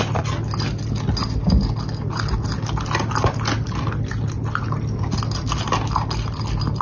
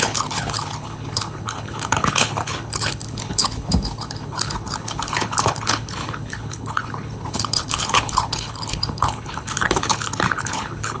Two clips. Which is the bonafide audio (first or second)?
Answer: first